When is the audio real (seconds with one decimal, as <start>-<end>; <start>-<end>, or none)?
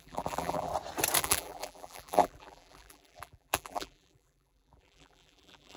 0.7-1.2